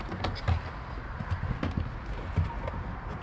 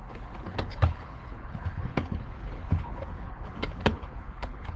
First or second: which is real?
first